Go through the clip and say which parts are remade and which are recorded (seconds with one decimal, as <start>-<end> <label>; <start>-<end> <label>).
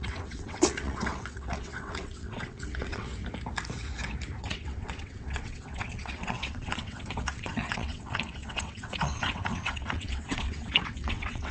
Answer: 0.0-3.1 remade; 3.1-4.4 recorded; 4.4-11.5 remade